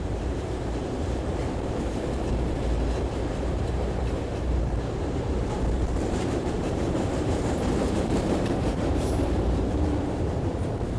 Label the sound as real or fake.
fake